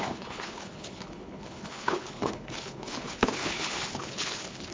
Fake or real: fake